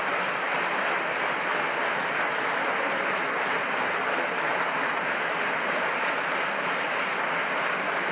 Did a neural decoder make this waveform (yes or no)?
yes